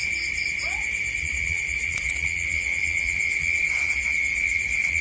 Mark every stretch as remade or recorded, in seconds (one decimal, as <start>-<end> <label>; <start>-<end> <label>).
0.0-1.2 recorded; 1.2-5.0 remade